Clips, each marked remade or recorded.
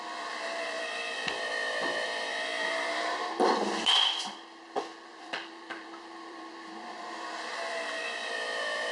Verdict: remade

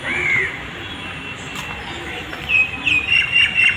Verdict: recorded